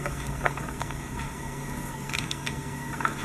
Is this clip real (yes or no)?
no